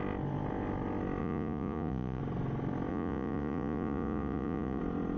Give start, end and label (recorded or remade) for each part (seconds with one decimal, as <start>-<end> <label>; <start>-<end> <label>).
0.0-1.2 recorded; 1.2-2.2 remade; 2.2-2.9 recorded; 2.9-4.8 remade; 4.8-5.2 recorded